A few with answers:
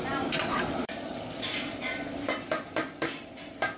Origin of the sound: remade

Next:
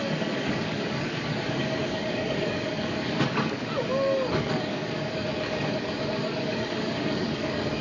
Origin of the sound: remade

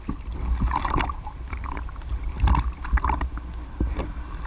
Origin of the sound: recorded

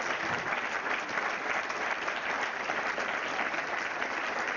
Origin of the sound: recorded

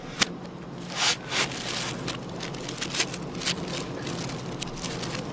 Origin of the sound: recorded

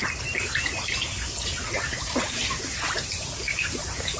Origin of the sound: recorded